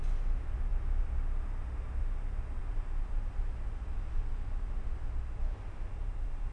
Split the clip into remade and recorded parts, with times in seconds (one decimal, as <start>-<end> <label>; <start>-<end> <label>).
0.0-6.5 recorded